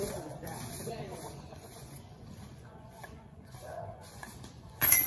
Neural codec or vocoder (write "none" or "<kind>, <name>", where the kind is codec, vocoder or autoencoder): vocoder, Vocos